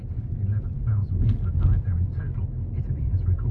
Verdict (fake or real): real